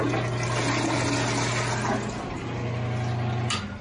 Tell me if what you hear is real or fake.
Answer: real